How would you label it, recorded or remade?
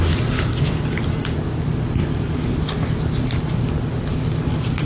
recorded